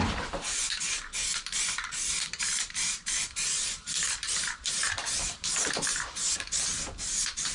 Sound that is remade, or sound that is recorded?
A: remade